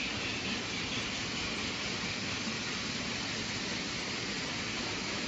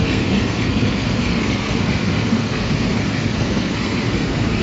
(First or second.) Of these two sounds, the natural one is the first